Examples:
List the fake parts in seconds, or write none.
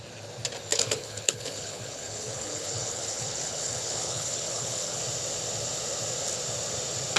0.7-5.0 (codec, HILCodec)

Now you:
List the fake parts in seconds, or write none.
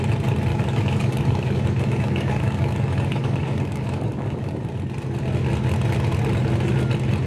0.5-4.7 (codec, DAC)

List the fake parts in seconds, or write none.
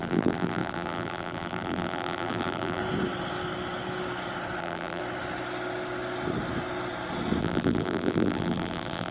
0.0-2.8 (vocoder, BigVGAN v2); 4.6-5.0; 7.4-9.1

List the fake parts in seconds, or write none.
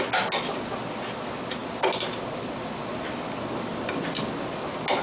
1.6-4.6 (vocoder, BigVGAN v2)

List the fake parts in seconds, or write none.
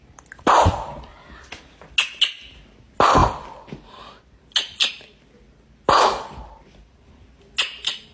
none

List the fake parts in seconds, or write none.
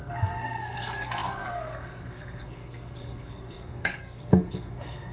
0.0-5.1 (codec, SNAC)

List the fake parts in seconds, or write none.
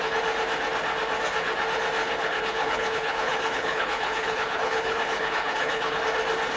2.0-6.0 (codec, HILCodec)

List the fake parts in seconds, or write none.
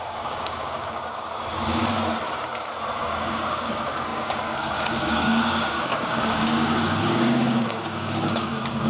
0.0-1.8 (codec, DAC); 3.0-8.9